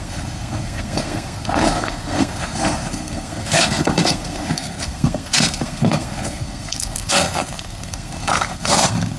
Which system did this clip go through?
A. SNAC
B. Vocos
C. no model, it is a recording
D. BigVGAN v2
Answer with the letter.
A